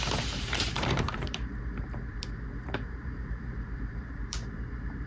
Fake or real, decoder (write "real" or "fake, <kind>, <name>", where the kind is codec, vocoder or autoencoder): fake, vocoder, BigVGAN v2